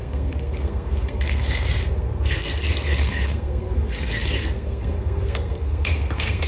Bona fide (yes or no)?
no